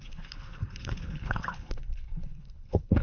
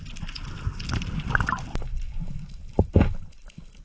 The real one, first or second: second